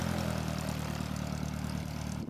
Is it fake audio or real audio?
real